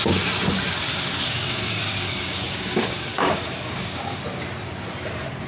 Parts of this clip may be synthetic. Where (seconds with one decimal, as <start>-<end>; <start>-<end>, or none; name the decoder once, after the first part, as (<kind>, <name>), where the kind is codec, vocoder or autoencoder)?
0.9-4.2 (codec, DAC)